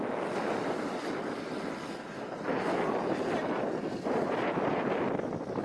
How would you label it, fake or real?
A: real